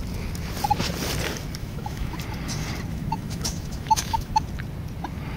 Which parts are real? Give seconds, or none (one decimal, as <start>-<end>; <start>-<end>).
0.0-1.6; 2.2-2.9; 4.4-5.4

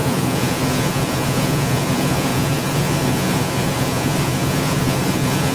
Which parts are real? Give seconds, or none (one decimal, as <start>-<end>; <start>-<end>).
none

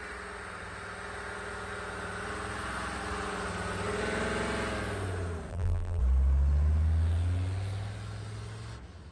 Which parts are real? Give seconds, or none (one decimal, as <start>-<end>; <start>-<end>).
0.0-5.5; 6.0-9.1